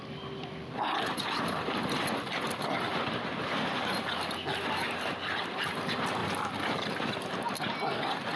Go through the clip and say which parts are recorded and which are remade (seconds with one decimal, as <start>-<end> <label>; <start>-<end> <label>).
0.0-8.4 recorded